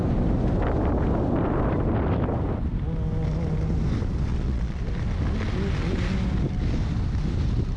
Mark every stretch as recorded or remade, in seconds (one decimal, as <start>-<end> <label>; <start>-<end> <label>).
0.0-4.3 recorded; 4.3-4.8 remade; 4.8-7.8 recorded